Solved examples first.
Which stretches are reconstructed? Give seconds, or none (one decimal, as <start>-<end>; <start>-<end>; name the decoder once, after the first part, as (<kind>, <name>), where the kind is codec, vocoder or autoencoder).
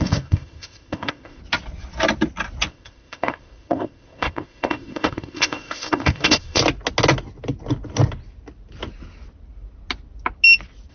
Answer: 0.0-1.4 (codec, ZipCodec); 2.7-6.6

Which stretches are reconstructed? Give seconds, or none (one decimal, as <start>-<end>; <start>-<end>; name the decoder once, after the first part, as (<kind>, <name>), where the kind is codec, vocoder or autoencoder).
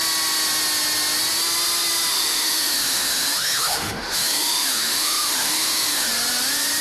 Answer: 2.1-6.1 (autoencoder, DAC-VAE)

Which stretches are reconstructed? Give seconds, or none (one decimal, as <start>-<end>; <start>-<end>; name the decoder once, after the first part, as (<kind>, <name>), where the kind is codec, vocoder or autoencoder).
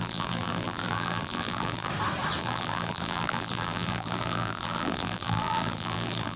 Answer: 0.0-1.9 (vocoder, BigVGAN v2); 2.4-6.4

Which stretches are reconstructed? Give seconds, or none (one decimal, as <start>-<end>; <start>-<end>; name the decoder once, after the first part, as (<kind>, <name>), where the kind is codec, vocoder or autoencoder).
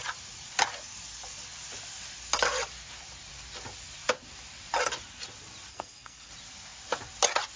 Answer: 5.7-6.3 (codec, SNAC)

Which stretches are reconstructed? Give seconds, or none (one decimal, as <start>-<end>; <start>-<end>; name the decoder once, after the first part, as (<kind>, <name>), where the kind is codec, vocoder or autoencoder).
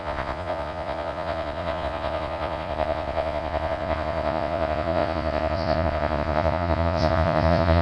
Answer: 0.0-7.8 (vocoder, Vocos)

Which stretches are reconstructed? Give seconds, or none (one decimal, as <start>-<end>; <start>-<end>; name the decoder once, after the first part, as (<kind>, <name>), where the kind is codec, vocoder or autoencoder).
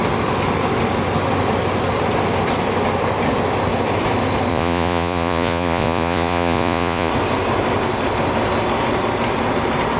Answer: 4.5-7.1 (vocoder, Vocos)